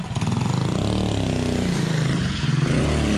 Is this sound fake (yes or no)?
no